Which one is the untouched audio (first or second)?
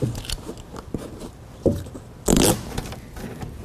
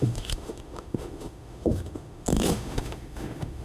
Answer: first